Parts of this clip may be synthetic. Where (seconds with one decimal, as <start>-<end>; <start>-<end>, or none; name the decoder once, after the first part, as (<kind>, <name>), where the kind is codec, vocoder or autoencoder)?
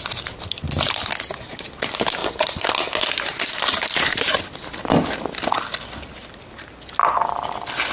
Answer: none